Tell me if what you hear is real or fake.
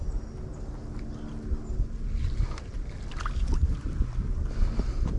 real